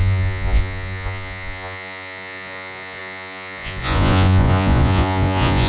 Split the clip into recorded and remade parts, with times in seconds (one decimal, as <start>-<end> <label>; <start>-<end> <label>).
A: 0.0-5.7 remade